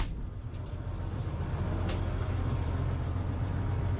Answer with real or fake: fake